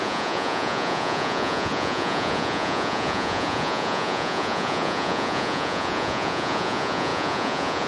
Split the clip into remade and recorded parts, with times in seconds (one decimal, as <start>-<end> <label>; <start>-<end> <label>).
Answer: 0.0-7.9 remade